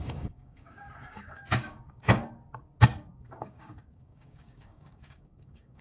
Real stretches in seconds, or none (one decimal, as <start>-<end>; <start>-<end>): 2.2-3.1